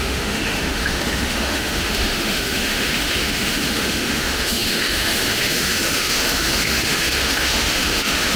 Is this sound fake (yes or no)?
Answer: yes